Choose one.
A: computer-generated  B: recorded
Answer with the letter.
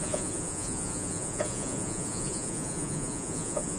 A